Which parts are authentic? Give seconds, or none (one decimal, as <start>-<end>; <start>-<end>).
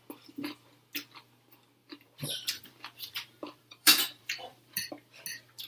0.0-1.8; 4.9-5.7